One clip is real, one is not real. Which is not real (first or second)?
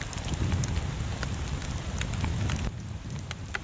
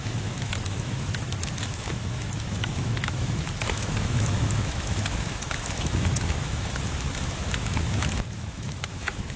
second